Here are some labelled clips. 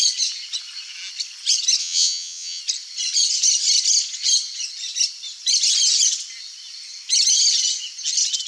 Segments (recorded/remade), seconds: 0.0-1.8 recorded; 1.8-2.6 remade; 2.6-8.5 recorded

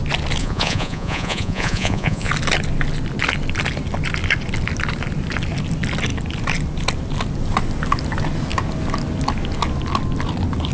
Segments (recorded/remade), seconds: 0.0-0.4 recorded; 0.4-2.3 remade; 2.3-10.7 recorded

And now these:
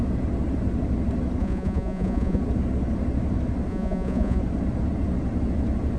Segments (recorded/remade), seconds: 0.0-1.4 recorded; 1.4-2.4 remade; 2.4-3.7 recorded; 3.7-4.4 remade; 4.4-6.0 recorded